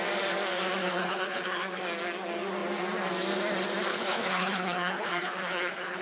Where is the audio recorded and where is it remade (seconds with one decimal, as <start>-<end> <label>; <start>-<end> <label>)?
0.0-0.8 recorded; 0.8-1.8 remade; 1.8-3.9 recorded; 3.9-6.0 remade